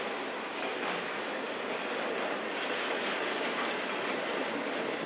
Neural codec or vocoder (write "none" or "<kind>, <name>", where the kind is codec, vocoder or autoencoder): none